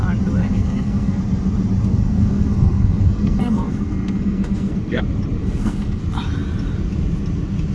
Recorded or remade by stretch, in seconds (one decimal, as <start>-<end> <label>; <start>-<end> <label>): 0.0-0.4 recorded; 0.4-1.2 remade; 1.2-1.9 recorded; 1.9-5.0 remade; 5.0-5.4 recorded; 5.4-6.0 remade; 6.0-7.7 recorded